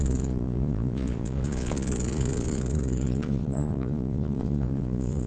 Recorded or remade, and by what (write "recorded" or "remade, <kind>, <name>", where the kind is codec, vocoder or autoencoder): remade, vocoder, Vocos